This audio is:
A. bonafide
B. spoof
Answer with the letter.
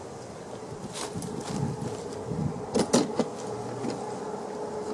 B